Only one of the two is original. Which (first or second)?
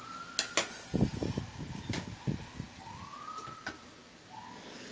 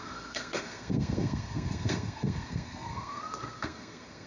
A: first